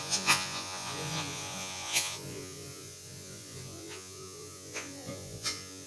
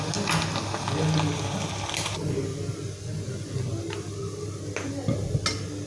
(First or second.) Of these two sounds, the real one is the second